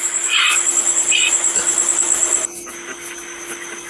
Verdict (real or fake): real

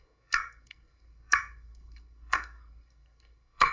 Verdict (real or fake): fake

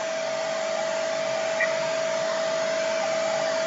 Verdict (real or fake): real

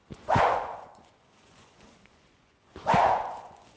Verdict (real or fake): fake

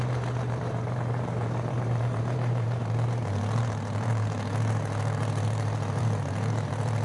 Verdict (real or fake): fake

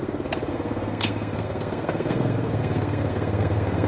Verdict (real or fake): fake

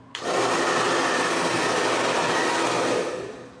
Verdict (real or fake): real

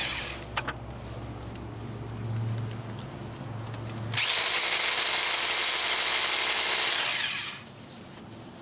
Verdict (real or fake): real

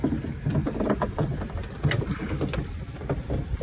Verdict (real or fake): real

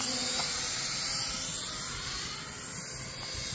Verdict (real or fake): real